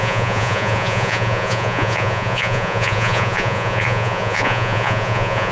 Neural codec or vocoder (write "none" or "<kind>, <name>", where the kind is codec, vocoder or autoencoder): vocoder, Vocos